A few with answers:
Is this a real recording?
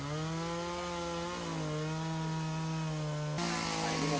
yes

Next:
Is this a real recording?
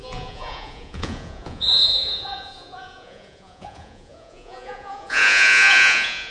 no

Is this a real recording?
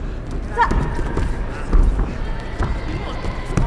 yes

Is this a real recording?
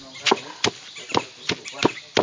yes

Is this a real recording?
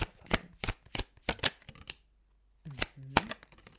yes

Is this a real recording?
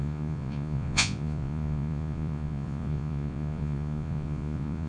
no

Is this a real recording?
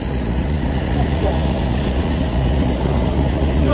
no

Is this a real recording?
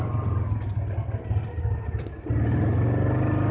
yes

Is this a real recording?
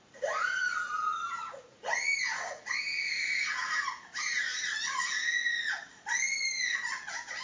no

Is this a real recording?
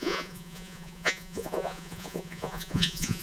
no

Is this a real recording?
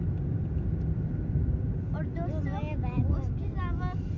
yes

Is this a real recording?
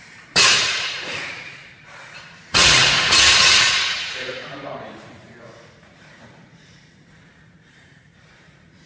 no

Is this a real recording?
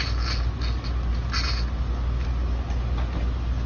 yes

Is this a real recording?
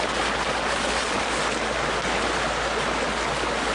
yes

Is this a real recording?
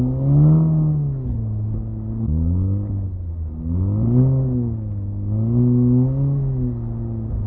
yes